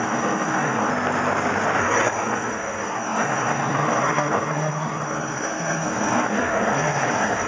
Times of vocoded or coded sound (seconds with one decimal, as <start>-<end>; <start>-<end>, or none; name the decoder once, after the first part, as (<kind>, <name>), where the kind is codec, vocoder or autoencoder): 0.0-0.9 (codec, SNAC); 1.8-7.5